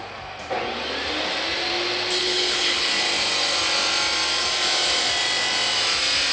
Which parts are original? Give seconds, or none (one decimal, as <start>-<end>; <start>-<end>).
0.0-2.2; 2.9-6.3

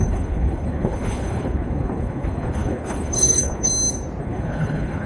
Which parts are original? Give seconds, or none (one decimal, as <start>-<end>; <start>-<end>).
3.7-4.2

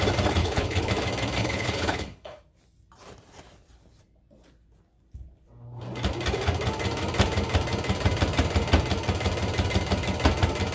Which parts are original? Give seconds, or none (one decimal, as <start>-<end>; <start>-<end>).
0.0-0.4; 0.9-1.4; 2.4-10.7

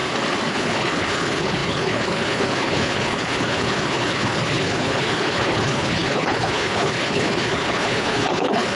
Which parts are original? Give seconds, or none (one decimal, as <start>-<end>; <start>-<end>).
0.0-0.5

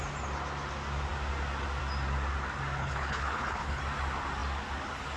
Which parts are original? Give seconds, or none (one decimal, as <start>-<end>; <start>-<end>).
0.0-2.8; 3.8-5.2

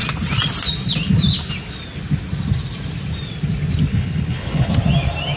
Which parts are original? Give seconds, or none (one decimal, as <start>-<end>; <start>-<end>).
0.0-3.9; 4.7-5.4